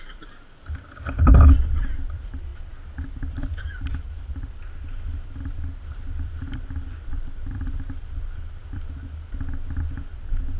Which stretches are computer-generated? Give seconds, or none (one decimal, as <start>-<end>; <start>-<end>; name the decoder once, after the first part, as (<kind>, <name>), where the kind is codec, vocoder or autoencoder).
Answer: 0.0-8.6 (vocoder, BigVGAN v2); 10.2-10.6